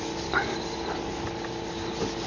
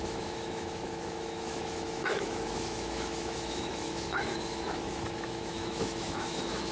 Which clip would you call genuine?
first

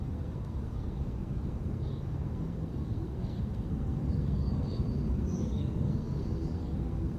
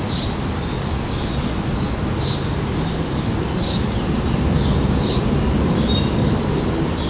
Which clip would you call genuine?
second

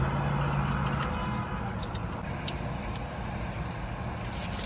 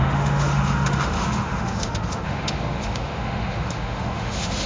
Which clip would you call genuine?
first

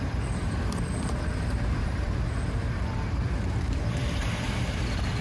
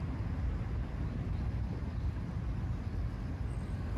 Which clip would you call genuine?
second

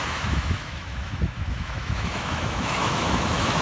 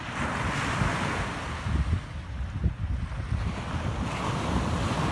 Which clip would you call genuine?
second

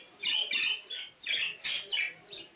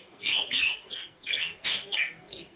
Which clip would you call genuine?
first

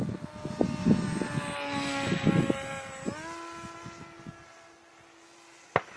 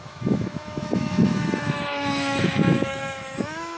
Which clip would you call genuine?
first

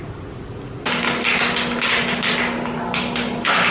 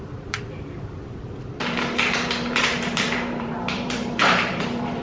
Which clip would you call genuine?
first